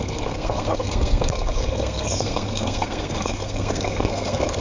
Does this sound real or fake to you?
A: fake